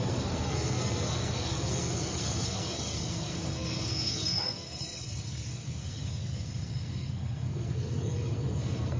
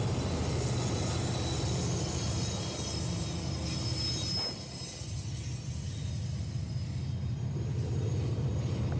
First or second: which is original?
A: second